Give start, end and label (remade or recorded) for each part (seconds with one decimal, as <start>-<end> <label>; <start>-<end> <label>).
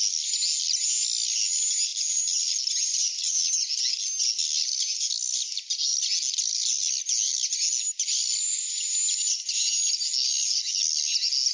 0.0-11.5 recorded